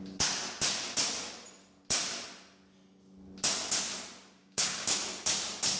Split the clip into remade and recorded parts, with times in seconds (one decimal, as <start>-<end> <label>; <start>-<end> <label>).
0.0-4.4 recorded; 4.4-5.0 remade; 5.0-5.8 recorded

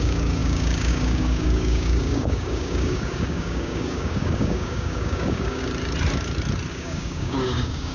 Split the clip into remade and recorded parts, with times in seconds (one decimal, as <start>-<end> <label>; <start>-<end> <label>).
0.0-5.6 remade; 5.6-6.7 recorded; 6.7-7.9 remade

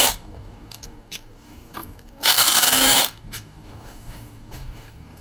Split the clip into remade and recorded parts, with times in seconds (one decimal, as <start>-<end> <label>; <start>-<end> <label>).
0.0-5.2 remade